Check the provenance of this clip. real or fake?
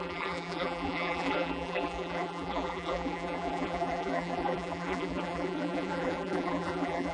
fake